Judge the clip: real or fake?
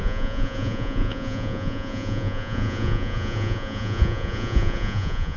fake